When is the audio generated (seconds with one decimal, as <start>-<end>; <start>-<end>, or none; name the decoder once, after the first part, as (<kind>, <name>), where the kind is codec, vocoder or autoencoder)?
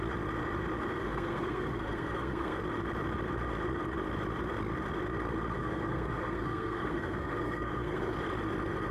1.0-2.6 (codec, SNAC); 5.6-8.1